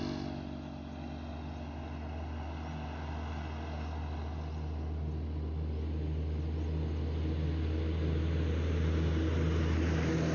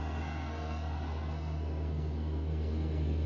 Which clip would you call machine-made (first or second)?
second